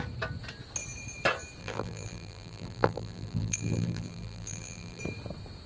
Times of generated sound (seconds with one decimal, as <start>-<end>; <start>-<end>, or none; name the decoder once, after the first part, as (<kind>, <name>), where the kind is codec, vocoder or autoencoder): 1.6-5.0 (vocoder, BigVGAN v2)